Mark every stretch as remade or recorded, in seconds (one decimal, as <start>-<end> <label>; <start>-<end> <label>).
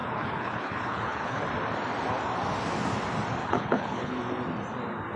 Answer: 0.0-1.4 remade; 1.4-3.4 recorded; 3.4-4.2 remade; 4.2-5.2 recorded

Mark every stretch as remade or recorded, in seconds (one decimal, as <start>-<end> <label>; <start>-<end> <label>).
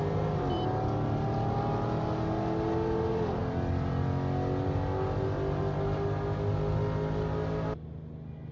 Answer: 0.0-8.5 recorded